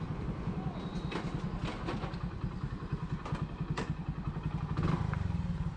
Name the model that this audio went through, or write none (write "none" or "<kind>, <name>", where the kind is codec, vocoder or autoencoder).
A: none